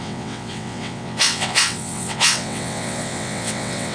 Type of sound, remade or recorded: remade